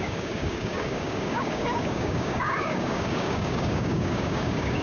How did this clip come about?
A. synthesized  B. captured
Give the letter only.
A